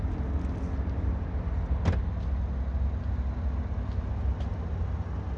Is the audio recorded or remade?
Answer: recorded